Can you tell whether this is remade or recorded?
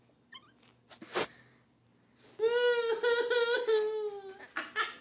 recorded